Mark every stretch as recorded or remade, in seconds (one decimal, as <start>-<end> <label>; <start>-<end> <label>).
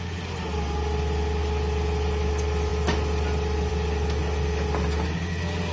0.0-5.7 recorded